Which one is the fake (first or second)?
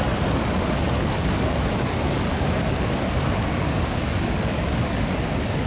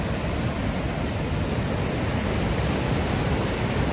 first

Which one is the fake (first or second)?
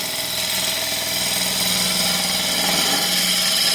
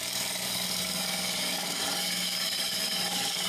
second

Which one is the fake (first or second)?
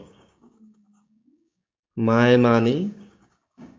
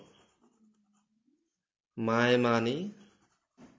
first